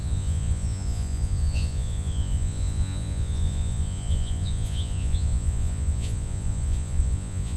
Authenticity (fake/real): fake